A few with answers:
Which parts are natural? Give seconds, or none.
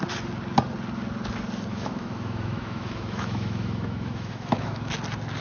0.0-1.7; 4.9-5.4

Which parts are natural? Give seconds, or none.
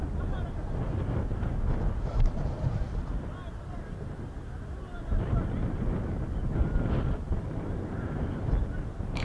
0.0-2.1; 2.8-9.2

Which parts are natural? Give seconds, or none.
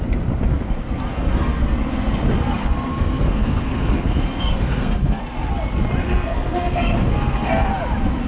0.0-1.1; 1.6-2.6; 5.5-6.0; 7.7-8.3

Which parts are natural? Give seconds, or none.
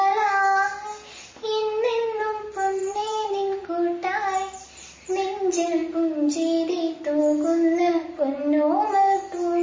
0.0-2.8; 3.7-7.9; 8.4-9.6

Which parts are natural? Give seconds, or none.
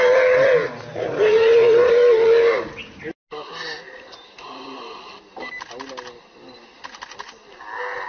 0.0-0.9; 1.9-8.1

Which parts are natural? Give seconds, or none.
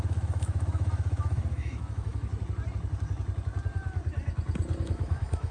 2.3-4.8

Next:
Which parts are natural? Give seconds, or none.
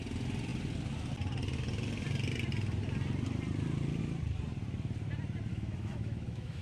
0.0-5.5